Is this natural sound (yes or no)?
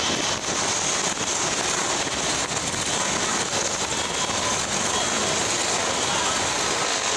yes